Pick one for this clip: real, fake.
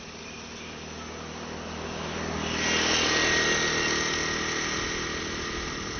real